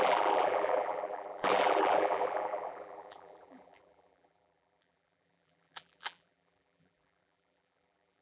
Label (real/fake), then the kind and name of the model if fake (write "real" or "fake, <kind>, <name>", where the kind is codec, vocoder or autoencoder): fake, vocoder, BigVGAN v2